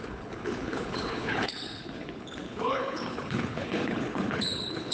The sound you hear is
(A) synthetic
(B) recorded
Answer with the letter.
A